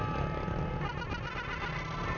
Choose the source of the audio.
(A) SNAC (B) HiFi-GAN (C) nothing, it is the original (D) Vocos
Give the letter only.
C